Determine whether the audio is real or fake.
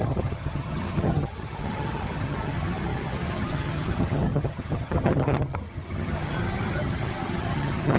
fake